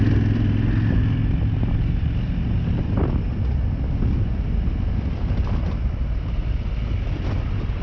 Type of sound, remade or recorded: recorded